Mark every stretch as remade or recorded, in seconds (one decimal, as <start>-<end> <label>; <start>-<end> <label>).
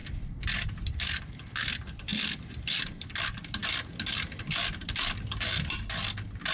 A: 0.0-6.5 recorded